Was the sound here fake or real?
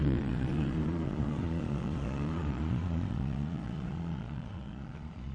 fake